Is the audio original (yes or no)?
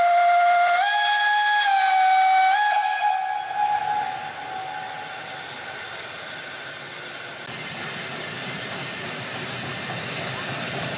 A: yes